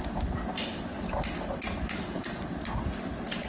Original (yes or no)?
yes